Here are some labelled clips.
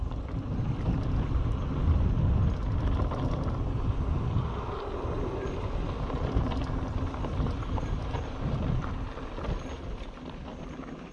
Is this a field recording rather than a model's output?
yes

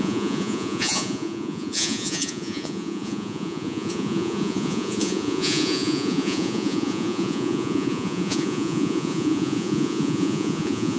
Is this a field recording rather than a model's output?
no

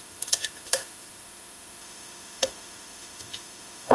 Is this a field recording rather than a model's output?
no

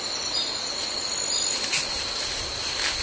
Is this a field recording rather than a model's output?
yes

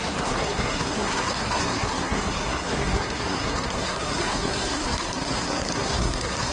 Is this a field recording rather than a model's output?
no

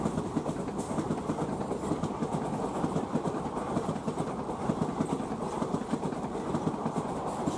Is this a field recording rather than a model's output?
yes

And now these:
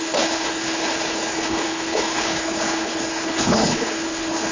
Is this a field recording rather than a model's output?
no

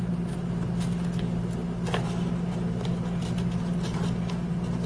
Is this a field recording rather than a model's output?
yes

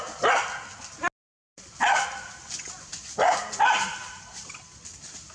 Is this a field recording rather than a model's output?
yes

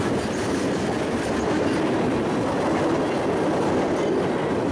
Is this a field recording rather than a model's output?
yes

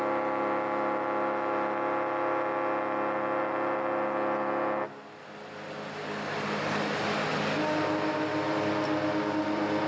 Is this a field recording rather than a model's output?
yes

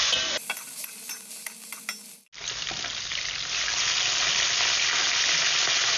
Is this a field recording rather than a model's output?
yes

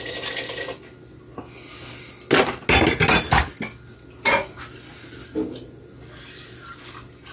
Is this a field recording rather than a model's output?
yes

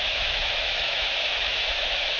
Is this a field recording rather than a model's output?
no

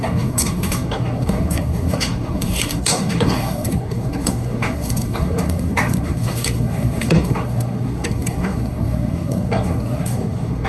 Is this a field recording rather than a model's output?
no